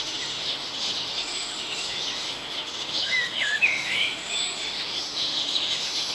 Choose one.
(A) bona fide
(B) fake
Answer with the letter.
B